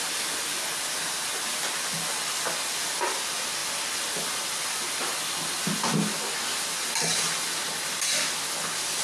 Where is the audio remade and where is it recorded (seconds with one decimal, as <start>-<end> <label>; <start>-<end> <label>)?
0.0-9.0 recorded